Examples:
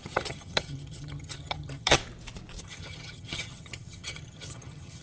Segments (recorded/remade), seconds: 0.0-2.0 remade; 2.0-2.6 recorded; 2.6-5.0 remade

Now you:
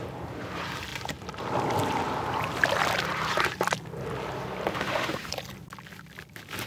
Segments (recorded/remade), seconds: 0.0-4.7 recorded; 4.7-5.3 remade; 5.3-6.7 recorded

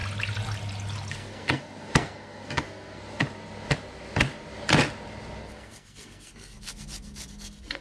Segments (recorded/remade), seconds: 0.0-1.1 recorded; 1.1-3.2 remade; 3.2-5.4 recorded; 5.4-7.8 remade

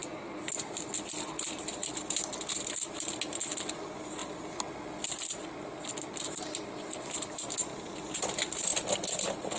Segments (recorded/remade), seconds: 0.0-9.6 recorded